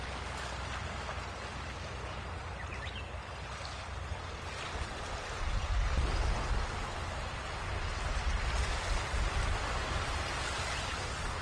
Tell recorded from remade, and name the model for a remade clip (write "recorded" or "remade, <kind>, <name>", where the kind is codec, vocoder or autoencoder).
recorded